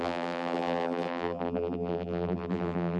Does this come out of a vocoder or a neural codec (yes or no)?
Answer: yes